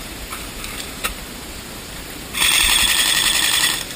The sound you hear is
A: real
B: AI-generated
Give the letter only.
B